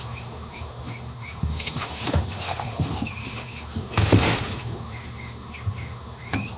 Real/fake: fake